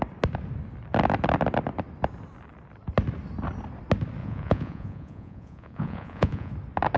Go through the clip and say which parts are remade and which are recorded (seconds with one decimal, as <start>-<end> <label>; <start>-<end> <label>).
0.0-4.2 recorded; 4.2-6.5 remade; 6.5-7.0 recorded